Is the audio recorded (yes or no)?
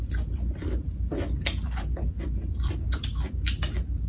yes